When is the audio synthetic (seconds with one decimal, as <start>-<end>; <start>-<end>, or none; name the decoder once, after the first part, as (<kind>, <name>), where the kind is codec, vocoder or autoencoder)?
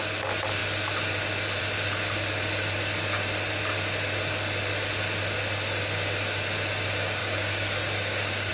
7.2-8.5 (codec, DAC)